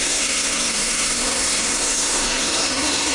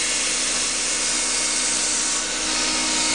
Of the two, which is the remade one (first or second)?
first